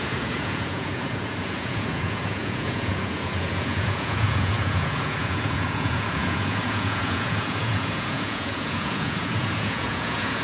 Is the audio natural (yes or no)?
no